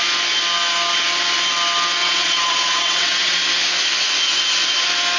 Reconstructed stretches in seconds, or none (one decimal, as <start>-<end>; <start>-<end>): 2.0-3.4